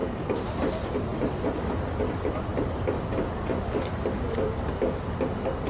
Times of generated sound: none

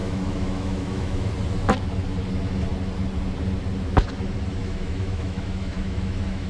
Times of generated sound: 0.0-1.3 (autoencoder, DAC-VAE); 4.6-6.5